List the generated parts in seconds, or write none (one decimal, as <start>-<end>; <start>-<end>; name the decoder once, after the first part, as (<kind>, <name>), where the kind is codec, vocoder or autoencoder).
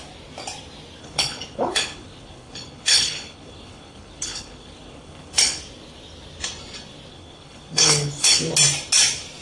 1.0-5.6 (codec, HILCodec); 7.1-8.4